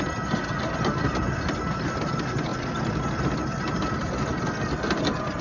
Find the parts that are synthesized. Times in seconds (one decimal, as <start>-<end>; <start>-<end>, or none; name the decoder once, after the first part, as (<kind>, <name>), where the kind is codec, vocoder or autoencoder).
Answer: none